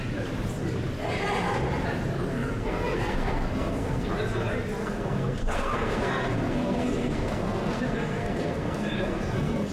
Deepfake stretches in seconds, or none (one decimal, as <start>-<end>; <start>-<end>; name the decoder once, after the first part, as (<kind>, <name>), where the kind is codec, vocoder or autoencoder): 2.3-4.1 (codec, SNAC); 4.8-9.7

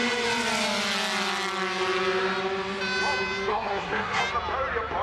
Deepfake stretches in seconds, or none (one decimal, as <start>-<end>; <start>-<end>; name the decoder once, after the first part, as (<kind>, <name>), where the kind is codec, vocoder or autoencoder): 3.5-4.2 (codec, SNAC)

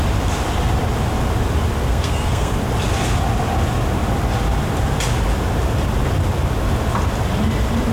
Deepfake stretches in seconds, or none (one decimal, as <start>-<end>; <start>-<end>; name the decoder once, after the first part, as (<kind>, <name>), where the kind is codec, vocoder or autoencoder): 1.8-2.5 (codec, SNAC)

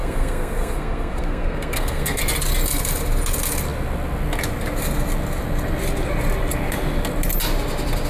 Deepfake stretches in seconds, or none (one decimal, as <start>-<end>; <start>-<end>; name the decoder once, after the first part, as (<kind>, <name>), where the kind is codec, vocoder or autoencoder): 0.0-2.2 (codec, SNAC)

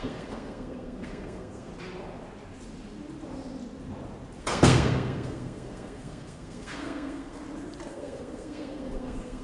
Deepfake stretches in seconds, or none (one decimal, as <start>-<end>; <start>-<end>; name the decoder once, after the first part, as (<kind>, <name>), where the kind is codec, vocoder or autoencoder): 0.0-1.7 (codec, SNAC); 4.4-7.4; 7.9-9.4

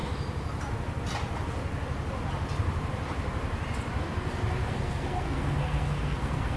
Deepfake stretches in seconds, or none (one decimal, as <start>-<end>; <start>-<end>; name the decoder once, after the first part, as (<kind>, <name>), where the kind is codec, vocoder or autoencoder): 4.6-6.6 (codec, SNAC)